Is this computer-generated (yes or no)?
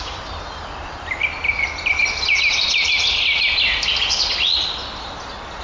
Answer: no